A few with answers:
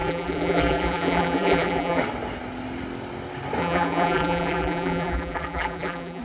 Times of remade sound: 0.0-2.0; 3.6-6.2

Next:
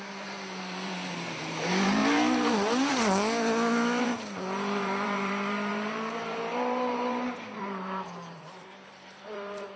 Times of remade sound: 0.0-2.0; 4.0-9.8

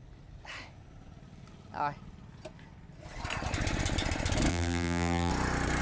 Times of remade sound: 4.5-5.3

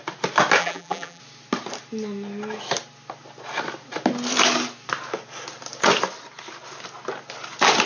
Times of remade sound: 0.6-1.2

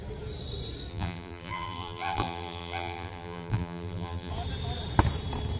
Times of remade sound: 0.9-4.3